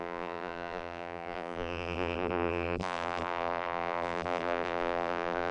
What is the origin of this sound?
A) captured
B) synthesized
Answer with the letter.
B